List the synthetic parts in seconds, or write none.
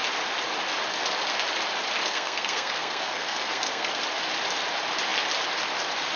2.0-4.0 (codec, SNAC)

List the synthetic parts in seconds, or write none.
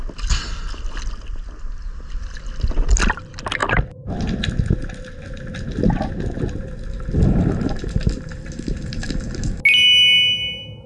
none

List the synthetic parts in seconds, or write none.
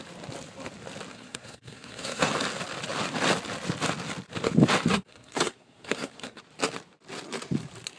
1.1-2.3 (codec, SNAC); 4.9-6.4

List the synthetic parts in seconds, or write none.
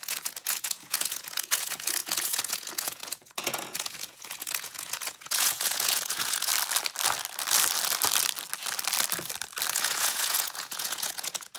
0.0-6.5 (vocoder, Vocos); 9.7-11.6